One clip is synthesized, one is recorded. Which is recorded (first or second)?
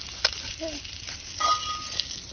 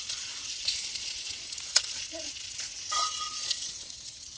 first